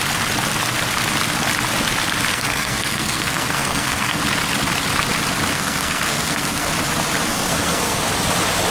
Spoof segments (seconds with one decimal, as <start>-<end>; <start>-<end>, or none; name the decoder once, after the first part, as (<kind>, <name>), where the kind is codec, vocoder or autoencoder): 2.3-4.2 (codec, SNAC); 5.5-6.7; 7.3-8.0